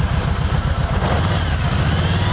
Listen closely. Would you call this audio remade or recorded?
recorded